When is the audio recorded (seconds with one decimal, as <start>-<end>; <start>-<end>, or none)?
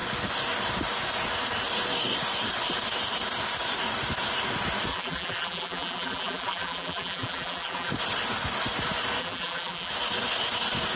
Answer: 0.0-4.9; 7.9-9.2; 9.9-11.0